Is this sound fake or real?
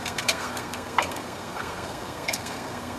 fake